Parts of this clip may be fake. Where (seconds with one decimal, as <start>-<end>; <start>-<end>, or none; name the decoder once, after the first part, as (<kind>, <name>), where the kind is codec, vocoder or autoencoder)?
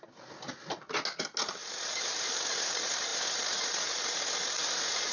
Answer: 1.6-2.3 (vocoder, BigVGAN v2); 3.1-4.2